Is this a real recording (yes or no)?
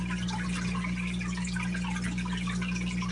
yes